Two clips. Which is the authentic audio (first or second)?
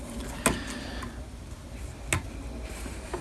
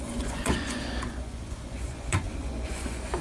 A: first